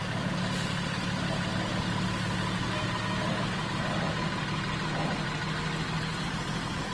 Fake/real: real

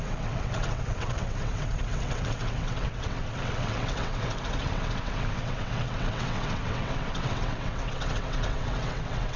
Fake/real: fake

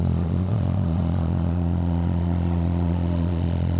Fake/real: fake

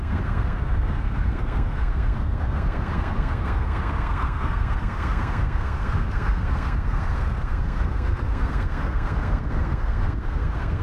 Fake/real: fake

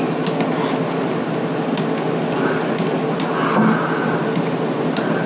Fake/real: real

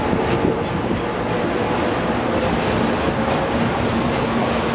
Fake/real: real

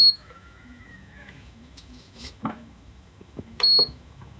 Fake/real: fake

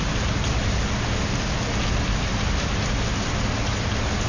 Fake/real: real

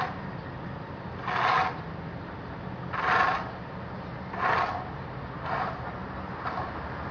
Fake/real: real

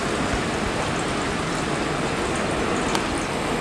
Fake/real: real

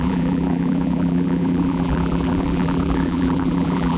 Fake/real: fake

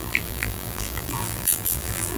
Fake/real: fake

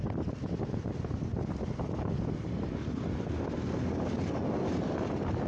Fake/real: real